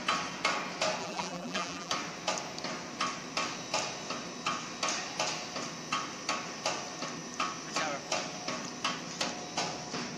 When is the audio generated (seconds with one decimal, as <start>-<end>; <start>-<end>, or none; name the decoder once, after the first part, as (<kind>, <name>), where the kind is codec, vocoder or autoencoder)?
1.0-1.9 (vocoder, BigVGAN v2)